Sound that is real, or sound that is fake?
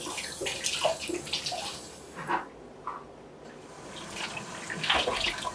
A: real